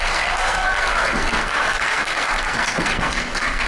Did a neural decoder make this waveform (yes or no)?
yes